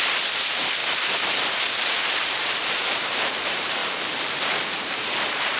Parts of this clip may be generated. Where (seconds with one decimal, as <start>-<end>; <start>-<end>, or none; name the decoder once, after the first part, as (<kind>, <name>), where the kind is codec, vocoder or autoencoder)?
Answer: 0.0-0.8 (vocoder, BigVGAN v2); 2.1-3.8; 4.4-5.6